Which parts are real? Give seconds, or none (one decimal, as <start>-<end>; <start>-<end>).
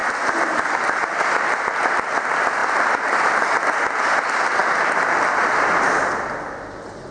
0.0-2.6; 3.6-4.6; 6.1-7.1